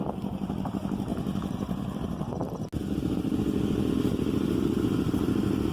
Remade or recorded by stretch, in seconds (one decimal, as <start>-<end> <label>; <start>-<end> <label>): 0.0-5.7 recorded